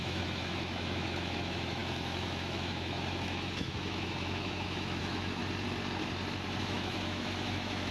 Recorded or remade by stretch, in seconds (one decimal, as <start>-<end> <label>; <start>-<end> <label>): 0.0-5.4 remade; 5.4-6.6 recorded; 6.6-7.9 remade